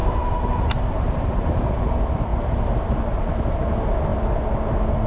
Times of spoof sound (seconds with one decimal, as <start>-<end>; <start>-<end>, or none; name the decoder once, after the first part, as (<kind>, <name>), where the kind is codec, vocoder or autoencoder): 0.0-1.9 (vocoder, BigVGAN v2); 2.3-3.1